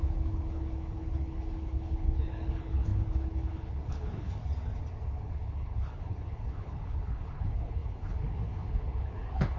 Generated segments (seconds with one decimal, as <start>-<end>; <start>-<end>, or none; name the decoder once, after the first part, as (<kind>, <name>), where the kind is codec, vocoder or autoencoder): 0.0-4.4 (codec, HILCodec); 5.2-9.6